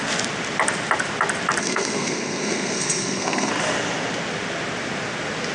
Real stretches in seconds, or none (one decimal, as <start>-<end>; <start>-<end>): 0.0-1.6; 3.5-5.5